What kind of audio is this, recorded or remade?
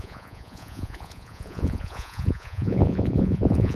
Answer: remade